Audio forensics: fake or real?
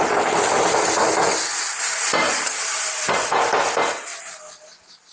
real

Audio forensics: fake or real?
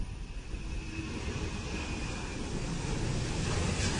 real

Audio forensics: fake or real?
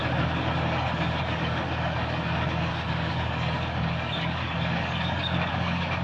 fake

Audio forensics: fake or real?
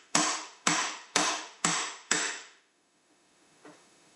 fake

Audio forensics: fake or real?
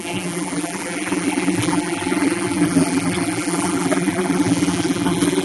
fake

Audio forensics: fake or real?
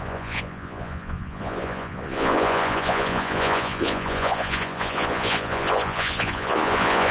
fake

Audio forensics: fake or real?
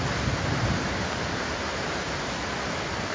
fake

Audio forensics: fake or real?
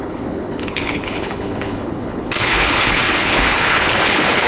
fake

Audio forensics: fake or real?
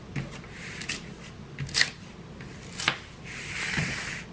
real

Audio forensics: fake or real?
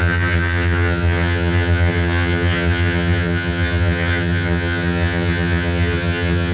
fake